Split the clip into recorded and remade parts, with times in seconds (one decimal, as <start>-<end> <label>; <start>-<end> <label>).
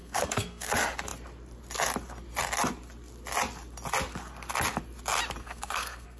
0.0-0.7 remade; 0.7-5.4 recorded; 5.4-6.2 remade